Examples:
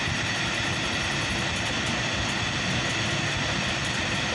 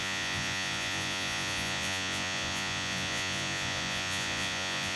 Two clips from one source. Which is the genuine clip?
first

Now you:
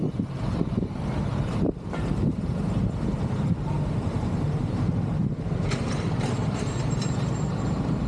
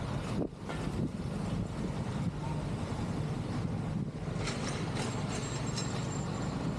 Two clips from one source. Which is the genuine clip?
second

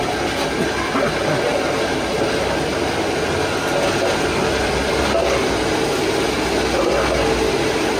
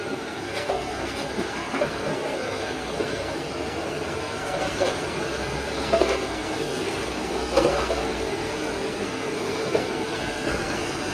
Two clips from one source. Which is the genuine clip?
first